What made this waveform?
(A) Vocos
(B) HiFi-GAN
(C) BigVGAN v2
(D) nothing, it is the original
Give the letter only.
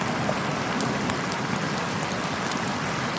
D